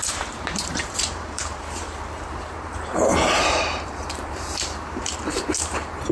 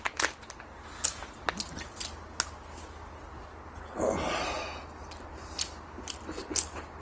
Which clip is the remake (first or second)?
first